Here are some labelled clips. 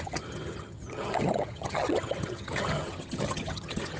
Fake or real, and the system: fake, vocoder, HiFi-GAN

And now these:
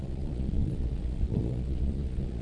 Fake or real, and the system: fake, vocoder, Vocos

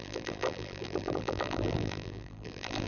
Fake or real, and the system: fake, vocoder, BigVGAN v2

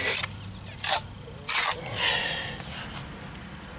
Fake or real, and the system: real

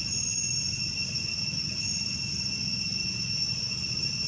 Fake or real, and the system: real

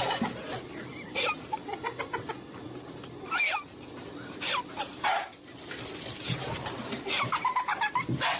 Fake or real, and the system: real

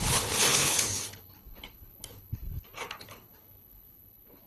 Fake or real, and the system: fake, codec, HILCodec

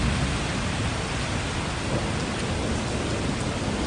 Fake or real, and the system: real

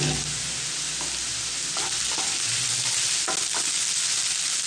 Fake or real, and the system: real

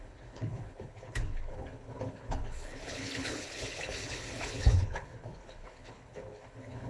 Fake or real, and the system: fake, codec, HILCodec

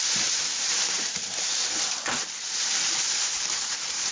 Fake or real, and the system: fake, vocoder, BigVGAN v2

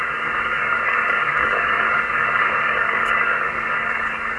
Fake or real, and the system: fake, codec, DAC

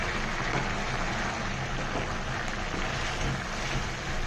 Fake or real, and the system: real